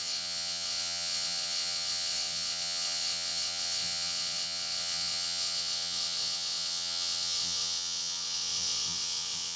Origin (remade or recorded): remade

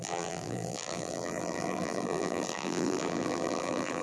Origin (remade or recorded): remade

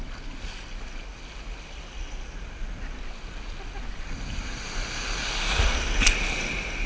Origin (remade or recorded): recorded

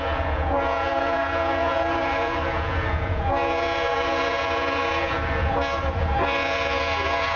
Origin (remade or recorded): remade